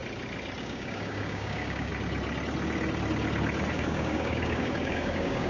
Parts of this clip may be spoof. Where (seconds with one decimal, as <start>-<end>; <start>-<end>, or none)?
0.6-1.9; 3.7-5.5